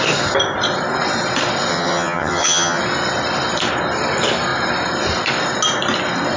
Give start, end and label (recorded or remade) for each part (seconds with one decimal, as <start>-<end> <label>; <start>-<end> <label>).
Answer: 0.0-1.7 recorded; 1.7-2.8 remade; 2.8-6.4 recorded